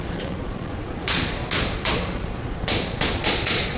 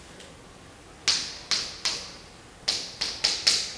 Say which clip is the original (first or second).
second